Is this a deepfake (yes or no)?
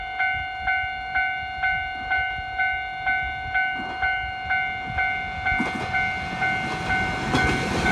no